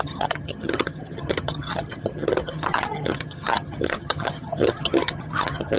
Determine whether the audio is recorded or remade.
remade